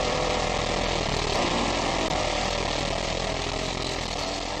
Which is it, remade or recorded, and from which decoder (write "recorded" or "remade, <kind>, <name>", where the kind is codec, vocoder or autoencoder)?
remade, vocoder, BigVGAN v2